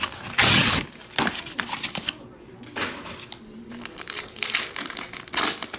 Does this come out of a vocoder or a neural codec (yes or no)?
no